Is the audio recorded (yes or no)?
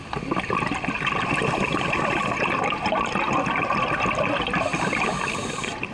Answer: yes